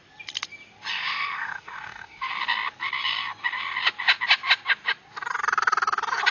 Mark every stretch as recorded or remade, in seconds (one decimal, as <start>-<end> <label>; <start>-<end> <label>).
0.0-0.9 recorded; 0.9-2.3 remade; 2.3-6.3 recorded